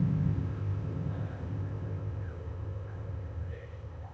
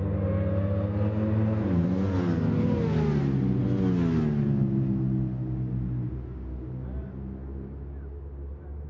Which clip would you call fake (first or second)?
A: first